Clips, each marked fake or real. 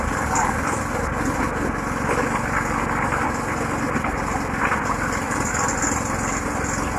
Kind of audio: real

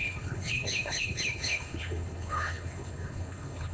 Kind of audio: fake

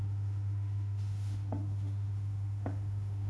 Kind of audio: fake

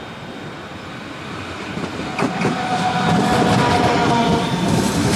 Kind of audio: real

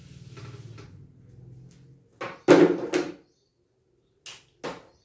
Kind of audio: real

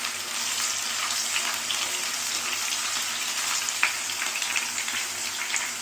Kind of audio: real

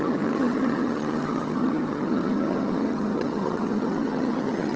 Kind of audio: fake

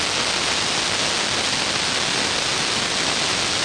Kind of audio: real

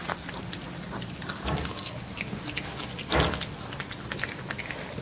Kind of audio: real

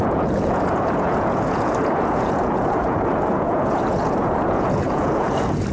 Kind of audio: fake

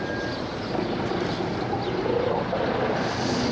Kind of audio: real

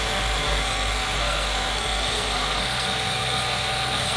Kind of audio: fake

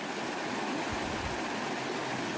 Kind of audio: real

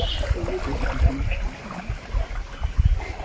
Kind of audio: real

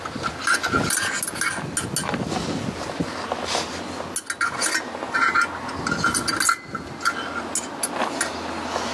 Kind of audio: real